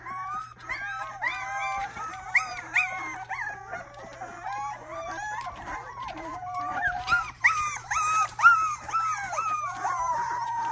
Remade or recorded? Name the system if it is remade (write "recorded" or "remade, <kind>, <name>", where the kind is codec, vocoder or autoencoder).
remade, vocoder, BigVGAN v2